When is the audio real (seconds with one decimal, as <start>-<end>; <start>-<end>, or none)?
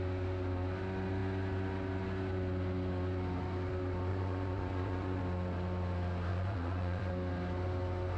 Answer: 0.0-4.1; 5.2-6.3; 7.1-8.2